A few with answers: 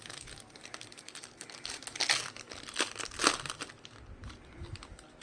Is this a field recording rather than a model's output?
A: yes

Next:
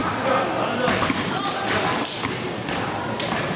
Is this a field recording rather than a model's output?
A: no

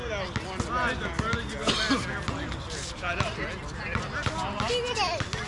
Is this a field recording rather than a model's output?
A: yes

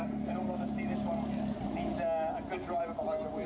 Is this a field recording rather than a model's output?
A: yes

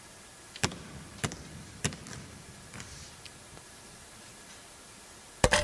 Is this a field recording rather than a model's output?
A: no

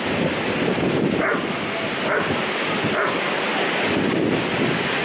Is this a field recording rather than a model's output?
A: yes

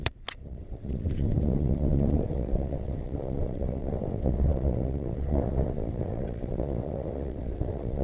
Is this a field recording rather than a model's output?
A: no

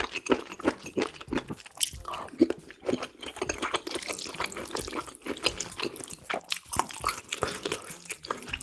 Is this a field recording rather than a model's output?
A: yes